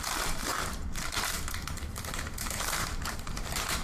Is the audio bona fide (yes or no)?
no